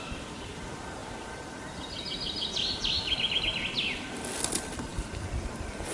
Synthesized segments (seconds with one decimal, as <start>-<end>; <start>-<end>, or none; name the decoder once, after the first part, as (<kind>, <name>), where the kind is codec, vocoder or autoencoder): none